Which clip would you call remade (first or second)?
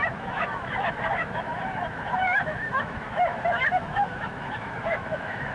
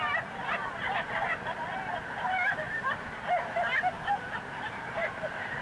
first